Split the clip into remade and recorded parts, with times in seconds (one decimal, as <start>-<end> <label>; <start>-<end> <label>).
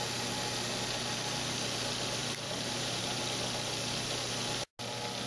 0.0-2.2 recorded; 2.2-3.2 remade; 3.2-5.3 recorded